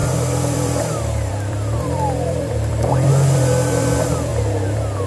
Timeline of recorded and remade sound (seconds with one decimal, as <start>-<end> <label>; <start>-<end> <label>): 0.0-4.3 remade; 4.3-5.1 recorded